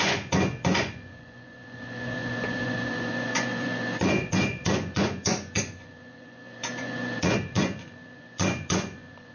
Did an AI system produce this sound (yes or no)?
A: yes